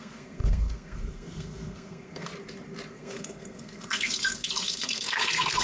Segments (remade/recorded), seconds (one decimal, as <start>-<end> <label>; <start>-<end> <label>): 0.0-2.3 remade; 2.3-2.9 recorded; 2.9-5.6 remade